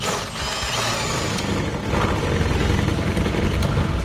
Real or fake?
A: real